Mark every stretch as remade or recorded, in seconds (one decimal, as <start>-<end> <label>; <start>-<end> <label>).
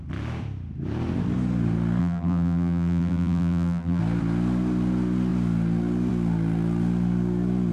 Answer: 0.0-2.0 recorded; 2.0-4.0 remade; 4.0-7.7 recorded